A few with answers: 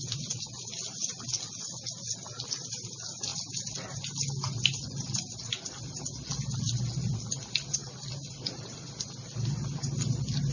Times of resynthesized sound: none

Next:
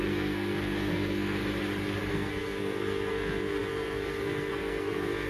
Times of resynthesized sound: 0.0-1.4 (codec, SNAC); 2.1-5.3